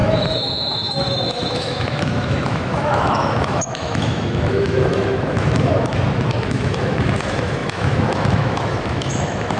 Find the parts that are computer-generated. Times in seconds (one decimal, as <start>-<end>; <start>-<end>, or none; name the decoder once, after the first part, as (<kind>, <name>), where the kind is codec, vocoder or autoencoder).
0.0-5.7 (autoencoder, DAC-VAE); 6.4-9.6